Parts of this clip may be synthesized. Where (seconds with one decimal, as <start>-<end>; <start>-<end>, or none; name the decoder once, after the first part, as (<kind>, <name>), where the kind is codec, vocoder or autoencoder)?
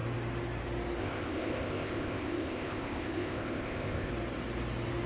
1.0-4.1 (codec, ZipCodec)